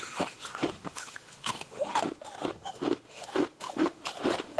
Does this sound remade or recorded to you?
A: remade